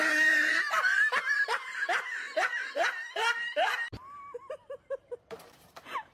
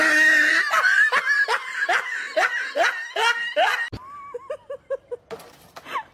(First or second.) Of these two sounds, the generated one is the first